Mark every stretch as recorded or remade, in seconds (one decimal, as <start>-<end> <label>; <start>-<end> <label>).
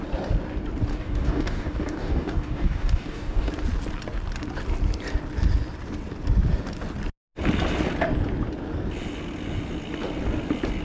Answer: 0.0-0.9 recorded; 0.9-3.5 remade; 3.5-10.8 recorded